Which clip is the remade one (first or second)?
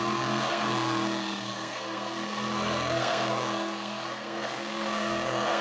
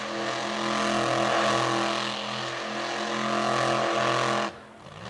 first